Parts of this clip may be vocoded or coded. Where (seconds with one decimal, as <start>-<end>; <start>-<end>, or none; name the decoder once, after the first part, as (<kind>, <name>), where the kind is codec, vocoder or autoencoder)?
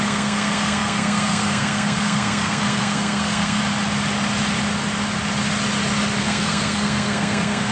0.0-3.6 (codec, SNAC); 6.2-7.7